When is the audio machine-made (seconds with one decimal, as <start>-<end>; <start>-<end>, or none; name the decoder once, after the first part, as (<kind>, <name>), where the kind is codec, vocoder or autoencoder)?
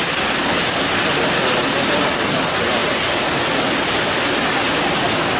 none